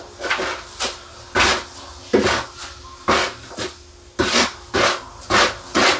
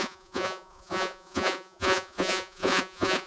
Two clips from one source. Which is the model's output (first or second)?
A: second